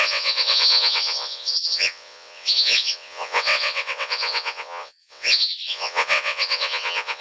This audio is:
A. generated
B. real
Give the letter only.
A